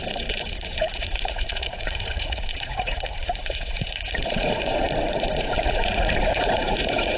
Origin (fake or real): fake